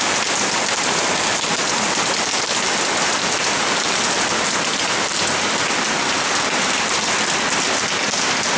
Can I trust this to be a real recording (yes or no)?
no